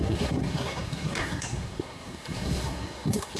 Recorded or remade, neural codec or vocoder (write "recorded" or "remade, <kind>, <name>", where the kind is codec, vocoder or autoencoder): remade, codec, SNAC